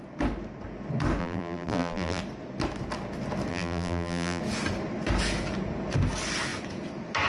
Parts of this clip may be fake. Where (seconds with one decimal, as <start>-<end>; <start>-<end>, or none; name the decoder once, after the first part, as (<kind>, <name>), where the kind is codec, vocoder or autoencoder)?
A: 1.2-2.2 (vocoder, BigVGAN v2); 3.5-4.4